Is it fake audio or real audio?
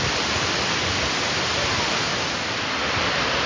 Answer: real